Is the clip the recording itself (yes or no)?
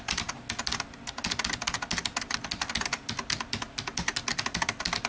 yes